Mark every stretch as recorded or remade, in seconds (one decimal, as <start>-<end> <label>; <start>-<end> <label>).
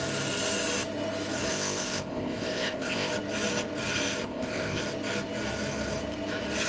0.0-1.5 recorded; 1.5-3.1 remade; 3.1-4.2 recorded; 4.2-4.8 remade; 4.8-6.7 recorded